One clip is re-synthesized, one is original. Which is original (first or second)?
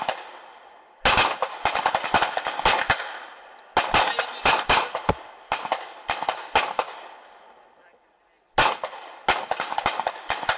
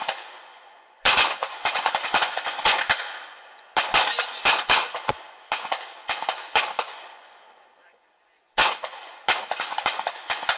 first